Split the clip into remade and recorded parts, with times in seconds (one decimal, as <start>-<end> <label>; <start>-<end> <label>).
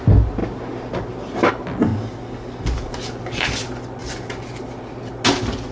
0.0-5.7 recorded